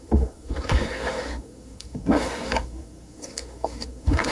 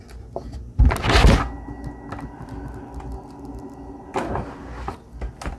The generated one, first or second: first